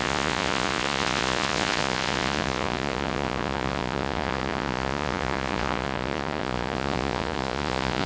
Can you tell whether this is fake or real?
fake